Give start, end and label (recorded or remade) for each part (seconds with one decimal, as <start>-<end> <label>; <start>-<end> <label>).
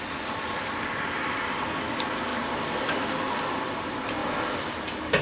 0.0-5.2 remade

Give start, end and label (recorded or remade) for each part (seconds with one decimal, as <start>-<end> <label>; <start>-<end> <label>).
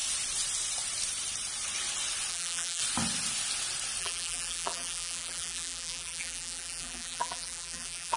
0.0-2.3 recorded; 2.3-2.8 remade; 2.8-4.0 recorded; 4.0-8.2 remade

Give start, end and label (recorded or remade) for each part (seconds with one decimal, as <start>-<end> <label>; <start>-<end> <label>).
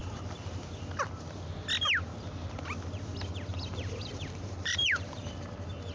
0.0-3.5 recorded; 3.5-5.2 remade; 5.2-5.9 recorded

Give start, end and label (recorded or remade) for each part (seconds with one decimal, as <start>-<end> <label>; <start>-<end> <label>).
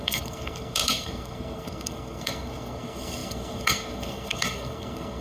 0.0-5.2 remade